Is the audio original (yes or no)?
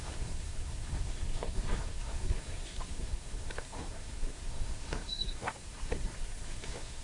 no